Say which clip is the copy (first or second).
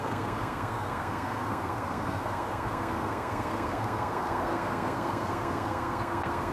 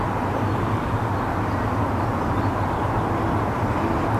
first